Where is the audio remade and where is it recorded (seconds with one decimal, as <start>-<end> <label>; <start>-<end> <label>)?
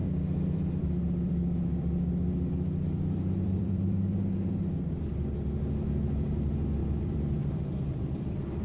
0.0-4.7 remade; 4.7-6.8 recorded; 6.8-8.6 remade